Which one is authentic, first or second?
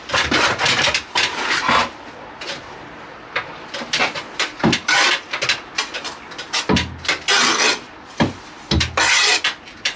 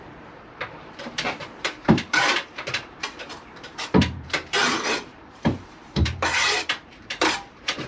first